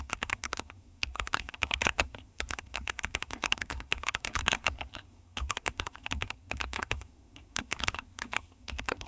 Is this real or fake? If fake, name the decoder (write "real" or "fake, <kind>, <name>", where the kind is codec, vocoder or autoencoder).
fake, codec, SNAC